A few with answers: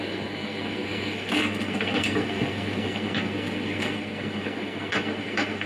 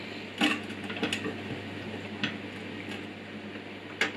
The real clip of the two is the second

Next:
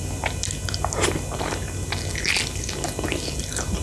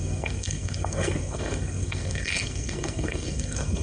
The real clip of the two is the first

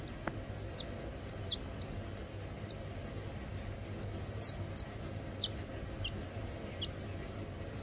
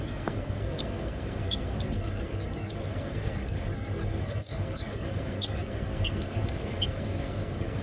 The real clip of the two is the first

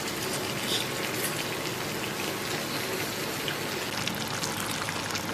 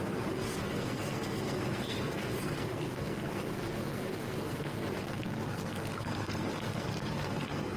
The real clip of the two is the first